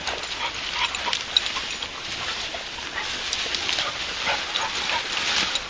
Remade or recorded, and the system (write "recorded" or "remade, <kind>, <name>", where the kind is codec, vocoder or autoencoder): recorded